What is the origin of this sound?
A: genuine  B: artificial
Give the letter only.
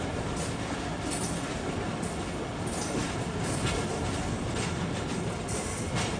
A